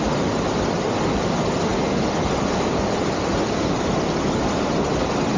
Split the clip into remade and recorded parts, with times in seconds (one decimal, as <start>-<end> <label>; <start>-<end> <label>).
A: 0.0-5.4 recorded